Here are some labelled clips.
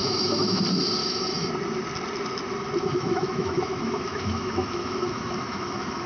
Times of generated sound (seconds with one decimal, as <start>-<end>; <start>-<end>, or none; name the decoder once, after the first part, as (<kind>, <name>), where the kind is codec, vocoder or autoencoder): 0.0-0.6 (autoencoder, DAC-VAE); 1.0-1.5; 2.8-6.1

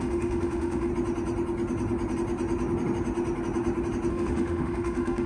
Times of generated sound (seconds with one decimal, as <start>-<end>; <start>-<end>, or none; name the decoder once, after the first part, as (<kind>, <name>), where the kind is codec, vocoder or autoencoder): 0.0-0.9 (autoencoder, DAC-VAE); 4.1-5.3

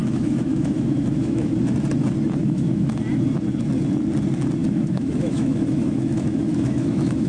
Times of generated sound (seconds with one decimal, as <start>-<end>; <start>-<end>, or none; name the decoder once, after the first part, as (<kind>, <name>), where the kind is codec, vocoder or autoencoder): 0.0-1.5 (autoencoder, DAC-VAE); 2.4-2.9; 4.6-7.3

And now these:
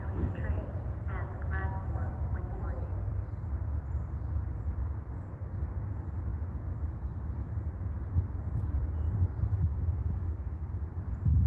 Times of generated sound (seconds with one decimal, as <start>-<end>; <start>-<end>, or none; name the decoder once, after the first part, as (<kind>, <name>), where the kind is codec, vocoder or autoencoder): 1.8-2.6 (autoencoder, DAC-VAE); 6.3-7.5; 9.7-10.7